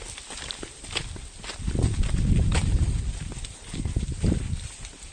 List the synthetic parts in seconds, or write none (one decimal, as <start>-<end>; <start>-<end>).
none

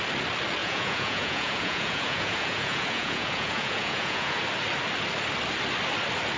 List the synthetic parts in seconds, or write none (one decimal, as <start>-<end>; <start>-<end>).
0.6-4.4

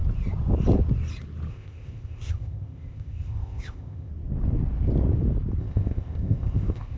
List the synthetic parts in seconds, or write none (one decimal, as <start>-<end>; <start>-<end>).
1.5-4.1; 5.6-7.0

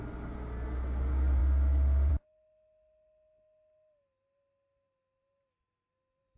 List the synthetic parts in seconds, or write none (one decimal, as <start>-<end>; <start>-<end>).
none

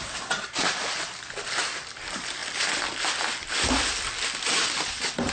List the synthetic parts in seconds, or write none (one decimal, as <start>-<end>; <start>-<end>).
2.4-5.3

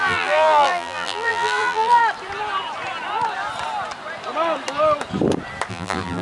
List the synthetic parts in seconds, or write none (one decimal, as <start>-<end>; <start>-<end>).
0.0-2.0; 5.7-6.2